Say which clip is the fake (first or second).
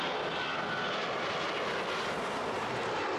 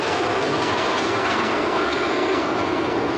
second